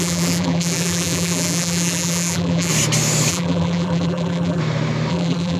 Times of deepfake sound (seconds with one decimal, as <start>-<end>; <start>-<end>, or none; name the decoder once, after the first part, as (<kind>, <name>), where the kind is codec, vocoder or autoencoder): 0.0-2.7 (vocoder, BigVGAN v2); 3.3-4.6; 5.1-5.6